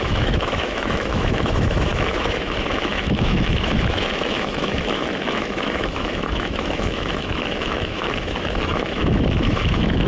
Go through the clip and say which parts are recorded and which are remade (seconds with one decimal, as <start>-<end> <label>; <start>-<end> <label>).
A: 0.0-10.1 remade